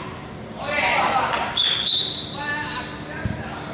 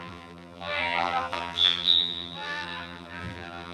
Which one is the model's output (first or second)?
second